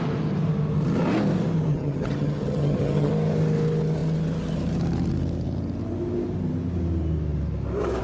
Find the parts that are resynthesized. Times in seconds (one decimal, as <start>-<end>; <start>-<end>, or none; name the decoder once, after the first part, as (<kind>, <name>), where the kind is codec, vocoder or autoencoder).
1.7-3.1 (vocoder, HiFi-GAN)